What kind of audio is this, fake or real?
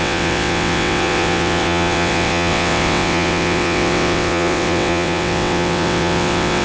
fake